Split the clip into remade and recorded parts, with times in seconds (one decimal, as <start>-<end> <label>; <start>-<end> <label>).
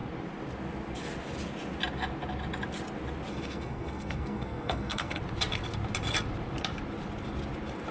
0.0-3.3 recorded; 3.3-5.2 remade; 5.2-7.9 recorded